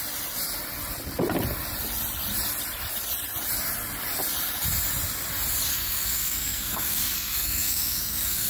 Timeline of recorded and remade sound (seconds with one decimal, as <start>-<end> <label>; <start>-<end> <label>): 0.0-5.7 recorded; 5.7-8.5 remade